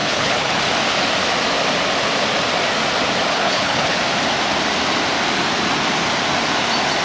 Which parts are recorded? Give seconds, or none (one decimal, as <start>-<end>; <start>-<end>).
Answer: 0.6-3.3; 4.0-7.0